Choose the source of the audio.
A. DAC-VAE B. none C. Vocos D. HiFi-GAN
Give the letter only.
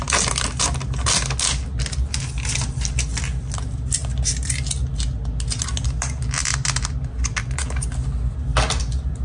B